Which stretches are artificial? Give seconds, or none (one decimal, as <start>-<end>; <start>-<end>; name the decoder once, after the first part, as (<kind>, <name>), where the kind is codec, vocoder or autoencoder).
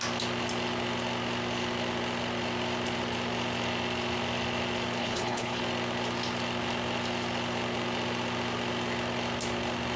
5.0-5.6 (codec, HILCodec)